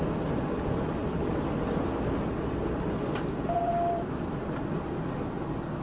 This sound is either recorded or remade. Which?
recorded